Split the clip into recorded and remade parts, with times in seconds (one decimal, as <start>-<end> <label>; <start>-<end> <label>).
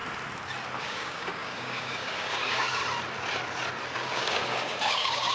0.0-0.8 recorded; 0.8-2.8 remade; 2.8-3.9 recorded; 3.9-5.3 remade